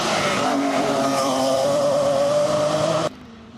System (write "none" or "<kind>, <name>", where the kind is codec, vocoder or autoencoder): vocoder, BigVGAN v2